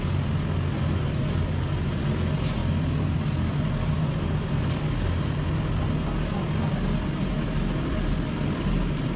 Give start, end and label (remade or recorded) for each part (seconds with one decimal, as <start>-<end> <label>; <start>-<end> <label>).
0.0-9.2 recorded